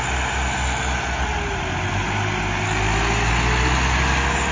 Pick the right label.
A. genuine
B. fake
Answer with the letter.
A